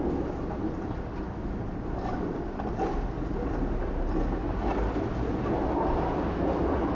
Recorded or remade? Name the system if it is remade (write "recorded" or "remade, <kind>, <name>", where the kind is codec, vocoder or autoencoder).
recorded